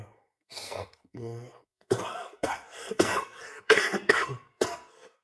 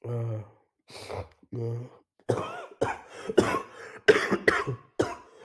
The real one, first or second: second